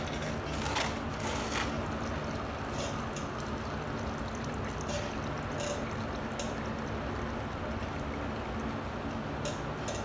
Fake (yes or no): no